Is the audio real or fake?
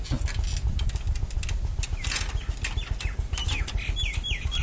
real